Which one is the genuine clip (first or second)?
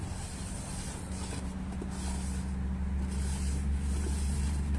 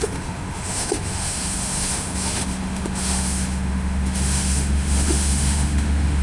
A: first